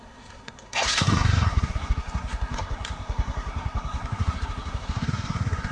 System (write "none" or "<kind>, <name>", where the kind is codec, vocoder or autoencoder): codec, SNAC